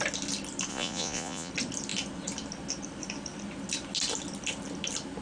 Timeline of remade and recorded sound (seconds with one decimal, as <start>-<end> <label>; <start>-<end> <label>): 0.0-0.7 recorded; 0.7-1.5 remade; 1.5-5.2 recorded